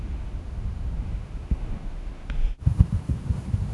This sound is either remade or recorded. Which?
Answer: remade